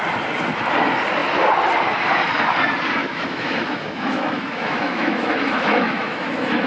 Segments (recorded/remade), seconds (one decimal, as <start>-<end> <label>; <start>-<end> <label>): 0.0-3.0 recorded; 3.0-6.7 remade